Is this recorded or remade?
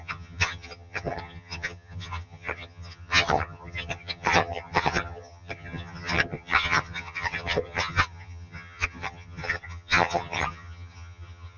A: remade